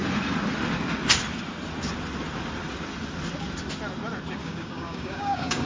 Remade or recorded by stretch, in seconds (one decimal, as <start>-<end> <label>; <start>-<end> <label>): 0.0-4.4 recorded; 4.4-5.7 remade